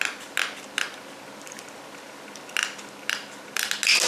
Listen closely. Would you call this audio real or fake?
real